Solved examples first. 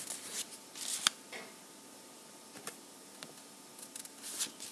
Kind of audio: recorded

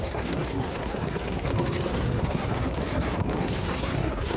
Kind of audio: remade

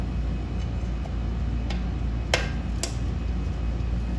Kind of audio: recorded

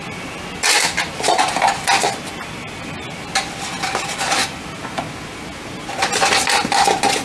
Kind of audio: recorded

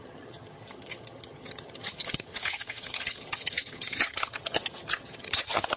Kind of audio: remade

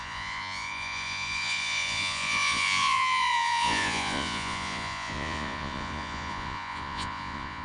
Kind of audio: remade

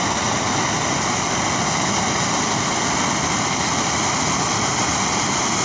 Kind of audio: recorded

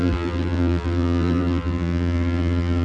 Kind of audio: remade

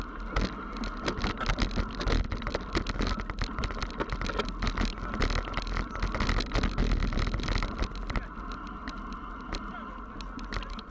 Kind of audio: recorded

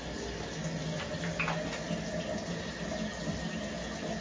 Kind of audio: recorded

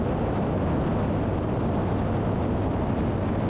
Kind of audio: recorded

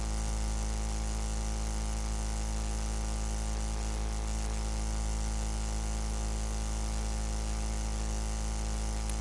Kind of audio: recorded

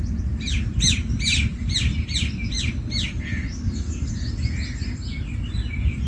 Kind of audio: recorded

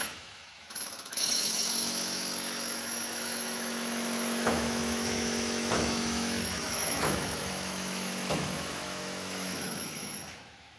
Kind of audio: remade